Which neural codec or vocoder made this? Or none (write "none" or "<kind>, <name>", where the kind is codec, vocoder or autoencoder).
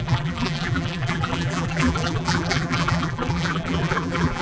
vocoder, BigVGAN v2